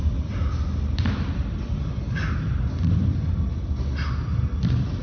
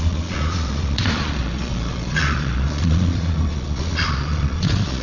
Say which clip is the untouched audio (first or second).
first